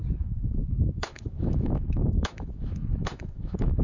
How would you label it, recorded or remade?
remade